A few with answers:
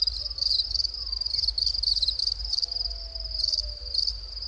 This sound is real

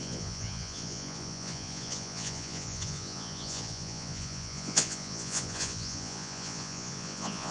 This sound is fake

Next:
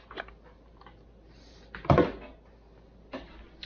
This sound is real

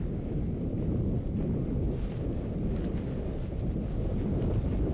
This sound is real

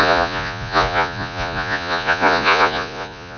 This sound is fake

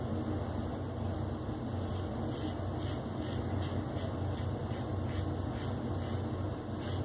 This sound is real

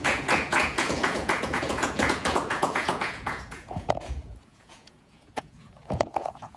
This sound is fake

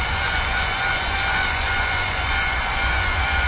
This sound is fake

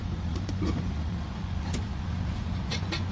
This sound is fake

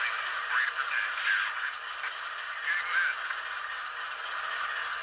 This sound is real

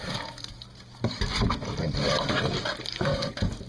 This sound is real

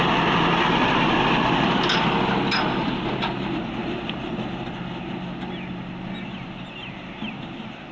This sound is real